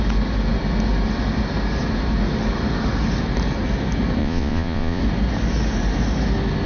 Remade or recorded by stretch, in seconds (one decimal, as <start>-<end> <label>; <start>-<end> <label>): 0.0-4.2 recorded; 4.2-5.0 remade; 5.0-6.7 recorded